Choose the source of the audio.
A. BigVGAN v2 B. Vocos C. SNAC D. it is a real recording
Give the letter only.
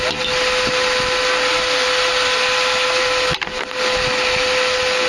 D